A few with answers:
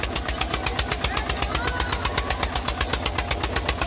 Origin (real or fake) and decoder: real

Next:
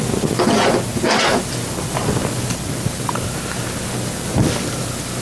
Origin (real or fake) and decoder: real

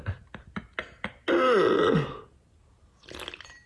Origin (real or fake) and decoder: real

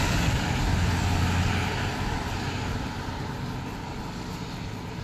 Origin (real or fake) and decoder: real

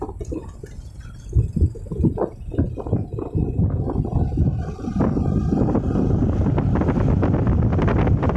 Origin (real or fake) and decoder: real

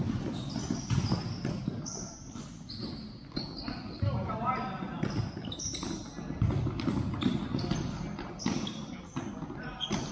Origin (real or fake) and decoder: real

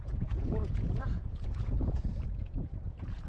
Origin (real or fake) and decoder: fake, vocoder, Vocos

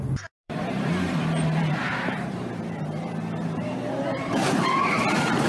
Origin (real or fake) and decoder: fake, vocoder, BigVGAN v2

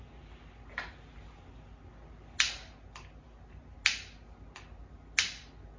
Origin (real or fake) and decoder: real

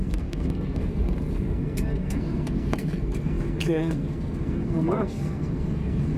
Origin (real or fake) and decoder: fake, codec, SNAC